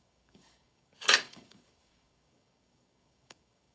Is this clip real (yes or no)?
no